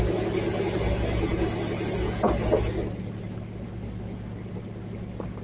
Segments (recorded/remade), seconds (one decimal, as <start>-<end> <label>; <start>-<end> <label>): 0.0-5.4 recorded